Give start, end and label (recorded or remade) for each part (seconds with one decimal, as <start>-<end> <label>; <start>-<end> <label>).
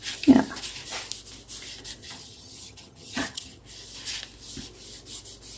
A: 0.0-2.0 recorded; 2.0-3.6 remade; 3.6-5.6 recorded